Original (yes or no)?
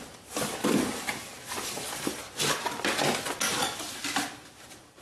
no